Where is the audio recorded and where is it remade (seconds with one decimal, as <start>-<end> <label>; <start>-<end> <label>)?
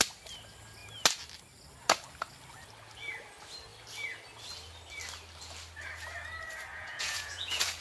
0.0-6.7 recorded; 6.7-7.8 remade